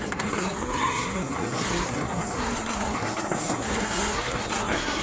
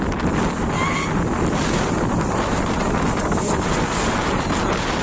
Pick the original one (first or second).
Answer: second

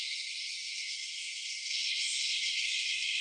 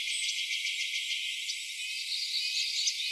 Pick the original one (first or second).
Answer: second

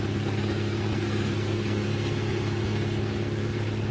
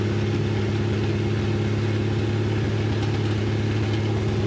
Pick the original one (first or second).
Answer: second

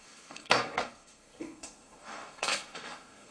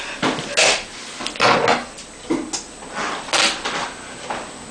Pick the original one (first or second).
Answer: second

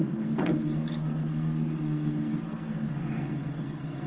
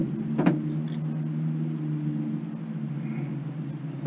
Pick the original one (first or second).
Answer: second